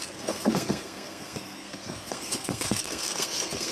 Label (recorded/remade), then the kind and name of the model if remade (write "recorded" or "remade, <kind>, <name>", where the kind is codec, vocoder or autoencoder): remade, codec, SNAC